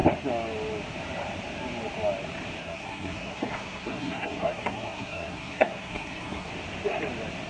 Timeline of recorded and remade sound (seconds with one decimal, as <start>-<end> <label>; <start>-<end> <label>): 0.0-2.6 recorded; 2.6-6.5 remade; 6.5-7.5 recorded